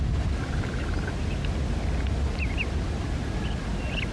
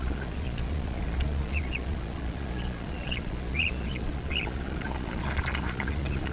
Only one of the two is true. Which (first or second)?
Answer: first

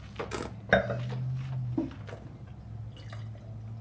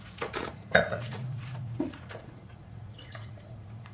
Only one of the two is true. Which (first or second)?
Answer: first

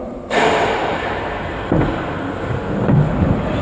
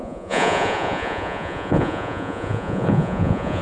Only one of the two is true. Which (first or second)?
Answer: first